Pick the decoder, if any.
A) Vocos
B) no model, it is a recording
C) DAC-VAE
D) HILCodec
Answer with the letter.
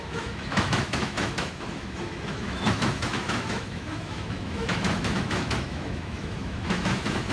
C